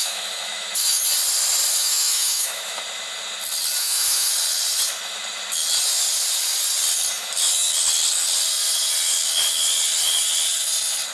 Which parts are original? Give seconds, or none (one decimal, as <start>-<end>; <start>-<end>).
1.0-1.8; 2.8-3.8; 4.3-11.1